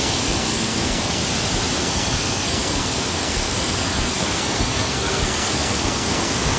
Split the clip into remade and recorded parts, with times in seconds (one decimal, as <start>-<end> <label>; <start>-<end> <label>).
0.0-1.2 remade; 1.2-1.8 recorded; 1.8-6.6 remade